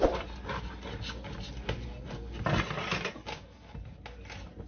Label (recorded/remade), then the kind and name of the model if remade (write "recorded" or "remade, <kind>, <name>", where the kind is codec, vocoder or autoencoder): recorded